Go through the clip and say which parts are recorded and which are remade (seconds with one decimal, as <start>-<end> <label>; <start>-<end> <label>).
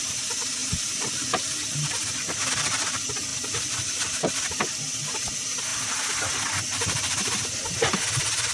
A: 0.0-8.5 recorded